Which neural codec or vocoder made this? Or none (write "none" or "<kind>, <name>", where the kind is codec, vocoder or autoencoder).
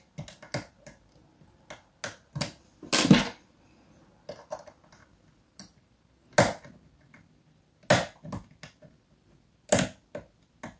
none